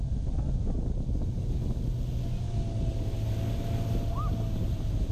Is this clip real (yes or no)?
yes